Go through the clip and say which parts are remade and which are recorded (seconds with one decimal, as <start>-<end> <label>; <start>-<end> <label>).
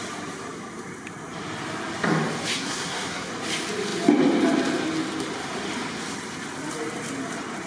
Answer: 0.0-2.5 recorded; 2.5-3.3 remade; 3.3-7.7 recorded